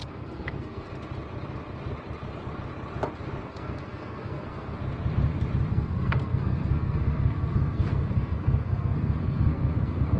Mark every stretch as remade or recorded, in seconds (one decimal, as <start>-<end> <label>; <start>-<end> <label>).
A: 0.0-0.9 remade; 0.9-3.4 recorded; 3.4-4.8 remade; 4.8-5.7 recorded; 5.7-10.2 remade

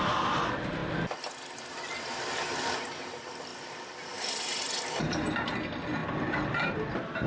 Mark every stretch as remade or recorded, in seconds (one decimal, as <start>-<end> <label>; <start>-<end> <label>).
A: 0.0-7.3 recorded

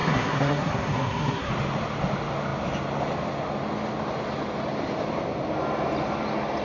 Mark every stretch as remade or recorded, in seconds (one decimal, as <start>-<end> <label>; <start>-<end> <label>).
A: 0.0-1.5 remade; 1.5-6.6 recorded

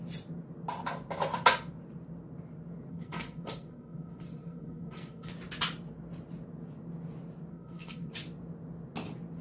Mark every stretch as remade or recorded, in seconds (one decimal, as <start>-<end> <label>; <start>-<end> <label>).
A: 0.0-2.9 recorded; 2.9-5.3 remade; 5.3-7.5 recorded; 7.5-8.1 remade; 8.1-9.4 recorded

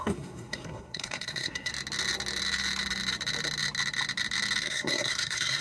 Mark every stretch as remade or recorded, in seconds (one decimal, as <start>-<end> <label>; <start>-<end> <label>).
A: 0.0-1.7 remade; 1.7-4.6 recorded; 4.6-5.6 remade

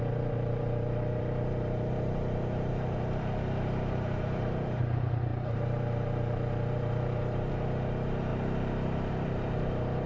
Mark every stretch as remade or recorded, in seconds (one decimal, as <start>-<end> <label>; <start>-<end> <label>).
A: 0.0-8.3 remade; 8.3-9.1 recorded; 9.1-10.1 remade